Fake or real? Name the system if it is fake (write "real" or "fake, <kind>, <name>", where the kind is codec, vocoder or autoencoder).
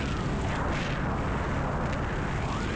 real